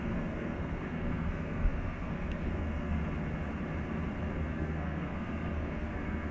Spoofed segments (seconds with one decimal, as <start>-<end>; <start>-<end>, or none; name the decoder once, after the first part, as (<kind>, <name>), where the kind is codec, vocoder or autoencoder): 0.0-3.0 (codec, SNAC); 4.3-6.3